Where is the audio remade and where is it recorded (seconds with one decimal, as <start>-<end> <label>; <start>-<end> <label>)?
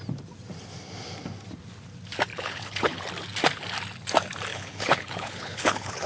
0.0-2.3 recorded; 2.3-3.0 remade; 3.0-4.5 recorded; 4.5-6.1 remade